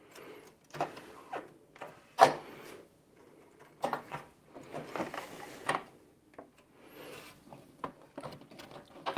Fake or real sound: real